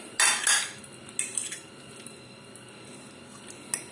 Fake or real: real